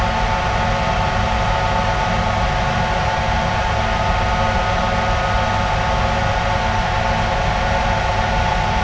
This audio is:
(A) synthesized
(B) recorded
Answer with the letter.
B